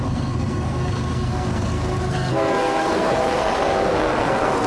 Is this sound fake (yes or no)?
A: yes